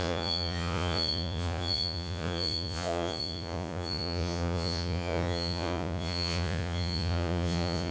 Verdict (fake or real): fake